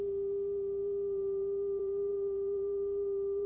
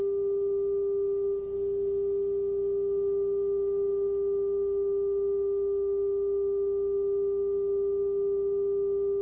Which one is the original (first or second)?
second